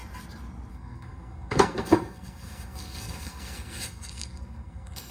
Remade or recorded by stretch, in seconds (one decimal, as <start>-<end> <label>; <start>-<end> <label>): 0.0-0.7 recorded; 0.7-5.1 remade